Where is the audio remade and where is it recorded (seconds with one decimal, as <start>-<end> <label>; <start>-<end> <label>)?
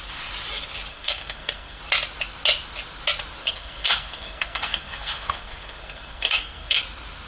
0.0-0.9 recorded; 0.9-1.8 remade; 1.8-3.4 recorded; 3.4-6.8 remade; 6.8-7.3 recorded